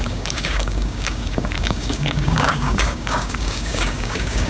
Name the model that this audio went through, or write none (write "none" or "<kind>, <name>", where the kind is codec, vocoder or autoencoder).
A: codec, DAC